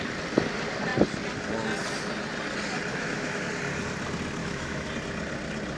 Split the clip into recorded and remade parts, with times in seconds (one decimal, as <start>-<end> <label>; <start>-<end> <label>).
0.0-2.9 recorded; 2.9-3.5 remade; 3.5-4.4 recorded; 4.4-4.9 remade; 4.9-5.8 recorded